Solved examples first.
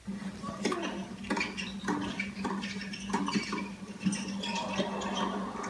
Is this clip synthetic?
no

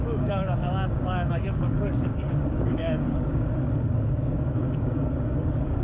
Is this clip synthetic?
yes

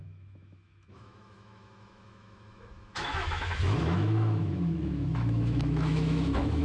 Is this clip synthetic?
yes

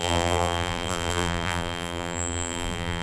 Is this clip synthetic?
yes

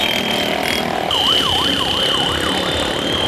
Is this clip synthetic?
no